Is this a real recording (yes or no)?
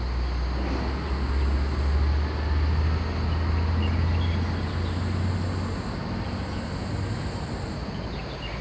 yes